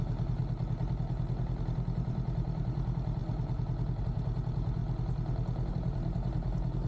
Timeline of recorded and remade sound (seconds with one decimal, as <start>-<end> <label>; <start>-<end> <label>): 0.0-0.4 remade; 0.4-1.6 recorded; 1.6-3.2 remade; 3.2-4.0 recorded; 4.0-4.8 remade; 4.8-5.7 recorded; 5.7-6.9 remade